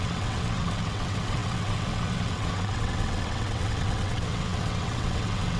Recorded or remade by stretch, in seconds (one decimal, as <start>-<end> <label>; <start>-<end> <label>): 0.0-5.6 remade